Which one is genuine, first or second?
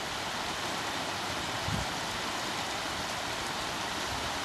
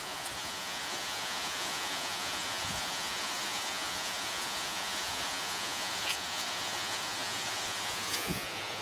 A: first